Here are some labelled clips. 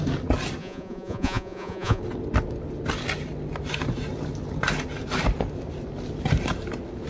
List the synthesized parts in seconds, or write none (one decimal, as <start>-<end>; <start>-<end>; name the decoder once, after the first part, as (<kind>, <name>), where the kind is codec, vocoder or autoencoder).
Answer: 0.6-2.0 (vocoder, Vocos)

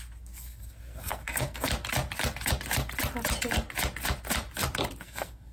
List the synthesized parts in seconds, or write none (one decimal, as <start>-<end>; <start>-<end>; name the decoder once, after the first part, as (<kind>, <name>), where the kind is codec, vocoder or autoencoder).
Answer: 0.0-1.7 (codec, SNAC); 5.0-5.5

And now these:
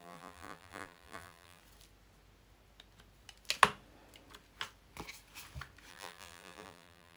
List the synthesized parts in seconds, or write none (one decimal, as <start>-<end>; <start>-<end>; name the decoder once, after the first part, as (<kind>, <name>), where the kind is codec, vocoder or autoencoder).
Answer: 0.0-1.6 (vocoder, BigVGAN v2); 5.9-7.2